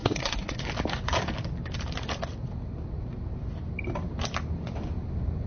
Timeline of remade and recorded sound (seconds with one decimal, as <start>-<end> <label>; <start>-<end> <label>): 0.0-0.6 remade; 0.6-5.5 recorded